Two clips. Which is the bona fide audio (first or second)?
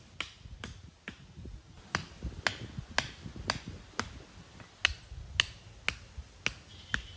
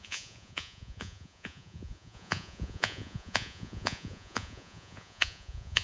first